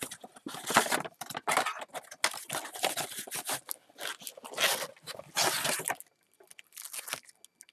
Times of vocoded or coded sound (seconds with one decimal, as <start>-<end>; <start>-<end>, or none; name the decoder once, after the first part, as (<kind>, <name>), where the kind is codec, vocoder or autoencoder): none